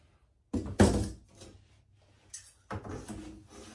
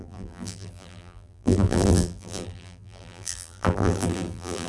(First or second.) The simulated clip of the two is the second